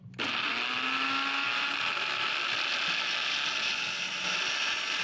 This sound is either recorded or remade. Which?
recorded